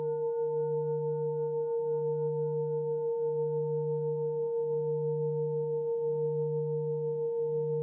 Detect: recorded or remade recorded